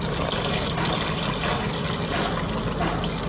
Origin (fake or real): real